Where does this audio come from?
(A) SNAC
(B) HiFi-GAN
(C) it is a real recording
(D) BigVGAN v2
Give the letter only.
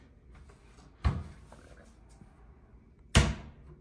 C